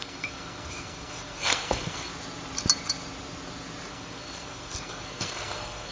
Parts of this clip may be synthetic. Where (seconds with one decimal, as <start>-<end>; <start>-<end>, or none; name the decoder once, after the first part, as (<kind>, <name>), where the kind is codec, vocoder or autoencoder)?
0.0-2.1 (codec, SNAC); 3.9-5.9

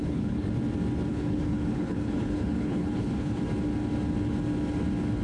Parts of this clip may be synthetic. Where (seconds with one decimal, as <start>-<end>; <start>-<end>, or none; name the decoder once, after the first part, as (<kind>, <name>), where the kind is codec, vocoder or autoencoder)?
0.0-0.5 (codec, HILCodec); 1.1-3.4

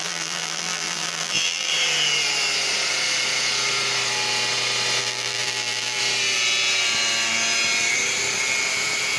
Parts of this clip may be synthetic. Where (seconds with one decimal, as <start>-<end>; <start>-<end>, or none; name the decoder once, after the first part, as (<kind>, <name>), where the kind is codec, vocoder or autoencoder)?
0.0-1.7 (vocoder, BigVGAN v2); 5.0-6.0